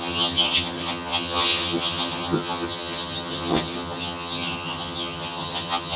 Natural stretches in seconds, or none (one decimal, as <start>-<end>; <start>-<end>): none